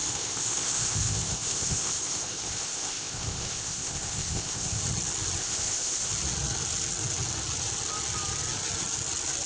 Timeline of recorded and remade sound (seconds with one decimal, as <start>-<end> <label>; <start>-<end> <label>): 0.0-4.8 remade; 4.8-5.4 recorded; 5.4-6.1 remade; 6.1-9.5 recorded